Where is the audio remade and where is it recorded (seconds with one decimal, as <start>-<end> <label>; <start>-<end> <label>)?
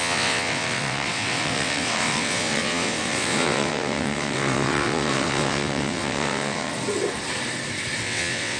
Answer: 0.0-6.7 remade; 6.7-8.0 recorded; 8.0-8.6 remade